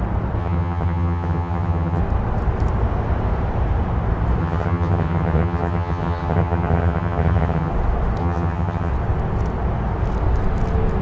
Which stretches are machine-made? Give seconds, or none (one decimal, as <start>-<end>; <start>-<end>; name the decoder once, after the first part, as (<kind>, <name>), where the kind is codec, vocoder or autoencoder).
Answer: 0.4-2.0 (vocoder, HiFi-GAN); 4.4-7.7; 8.2-8.9